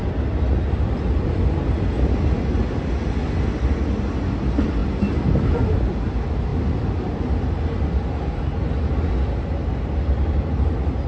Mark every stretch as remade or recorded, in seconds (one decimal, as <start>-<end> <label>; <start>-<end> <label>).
0.0-11.1 recorded